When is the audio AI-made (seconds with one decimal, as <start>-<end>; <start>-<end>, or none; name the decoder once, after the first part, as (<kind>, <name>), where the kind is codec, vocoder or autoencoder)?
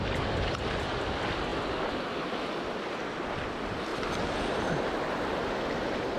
none